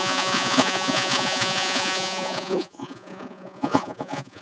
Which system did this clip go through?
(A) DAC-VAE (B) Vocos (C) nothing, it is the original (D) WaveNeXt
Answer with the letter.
B